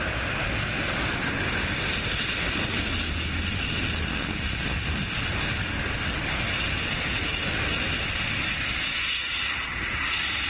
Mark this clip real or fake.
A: real